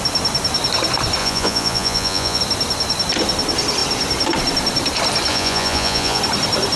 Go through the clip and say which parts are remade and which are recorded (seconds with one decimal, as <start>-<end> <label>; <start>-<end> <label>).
0.0-1.2 recorded; 1.2-2.4 remade; 2.4-5.3 recorded; 5.3-6.2 remade; 6.2-6.8 recorded